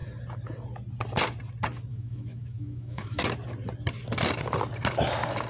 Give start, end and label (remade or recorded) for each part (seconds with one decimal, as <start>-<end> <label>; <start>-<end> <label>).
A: 0.0-1.9 recorded; 1.9-3.2 remade; 3.2-5.5 recorded